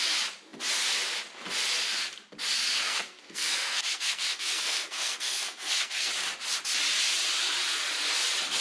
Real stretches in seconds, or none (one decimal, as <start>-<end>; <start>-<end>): 0.0-2.7; 6.1-8.6